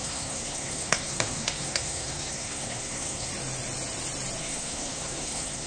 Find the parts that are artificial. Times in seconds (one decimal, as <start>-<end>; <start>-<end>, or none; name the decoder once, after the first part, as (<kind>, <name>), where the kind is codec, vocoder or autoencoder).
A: 0.0-3.3 (codec, SNAC); 4.4-5.7